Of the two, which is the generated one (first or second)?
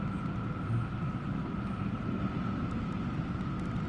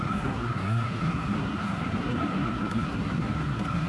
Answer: second